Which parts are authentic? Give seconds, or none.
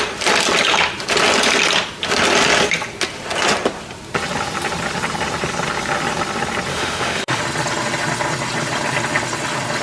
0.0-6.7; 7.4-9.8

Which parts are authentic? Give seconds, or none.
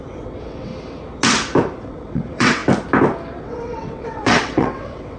0.7-1.8; 2.6-3.4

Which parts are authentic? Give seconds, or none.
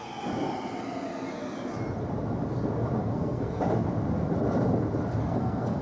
0.0-3.0; 3.6-5.2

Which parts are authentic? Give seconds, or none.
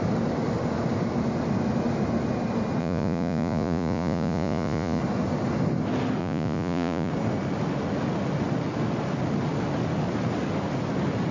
0.0-2.8; 5.0-6.2; 7.1-11.3